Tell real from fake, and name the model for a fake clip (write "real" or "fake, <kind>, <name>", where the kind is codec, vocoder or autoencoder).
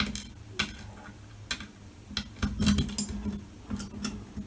real